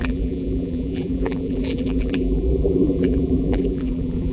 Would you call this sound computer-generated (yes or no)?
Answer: yes